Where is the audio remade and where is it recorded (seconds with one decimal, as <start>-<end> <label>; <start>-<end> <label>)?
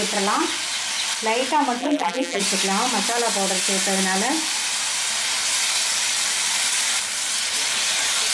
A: 0.0-1.8 recorded; 1.8-2.4 remade; 2.4-8.3 recorded